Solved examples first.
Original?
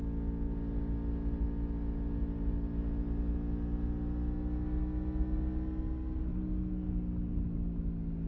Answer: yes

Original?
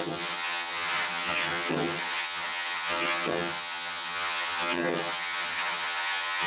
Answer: no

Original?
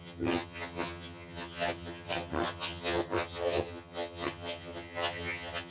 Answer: no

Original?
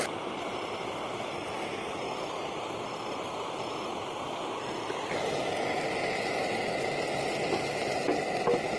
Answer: yes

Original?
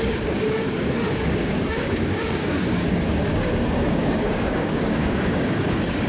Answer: no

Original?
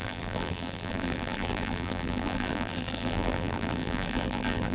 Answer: no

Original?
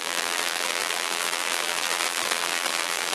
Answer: no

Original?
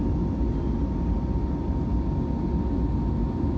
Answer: yes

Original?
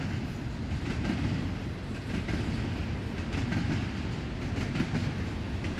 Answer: yes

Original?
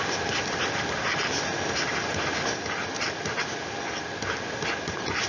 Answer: yes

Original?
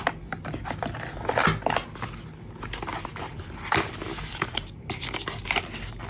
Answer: yes